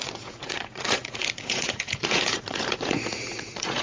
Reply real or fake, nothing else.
fake